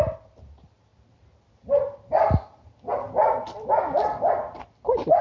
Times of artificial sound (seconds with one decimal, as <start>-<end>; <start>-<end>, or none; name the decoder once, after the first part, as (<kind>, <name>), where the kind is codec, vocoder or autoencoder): none